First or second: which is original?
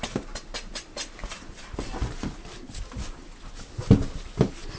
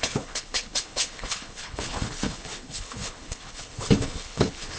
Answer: first